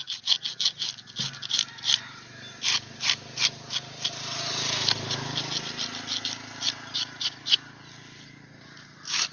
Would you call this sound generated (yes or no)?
no